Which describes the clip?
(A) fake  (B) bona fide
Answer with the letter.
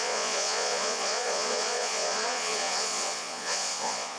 A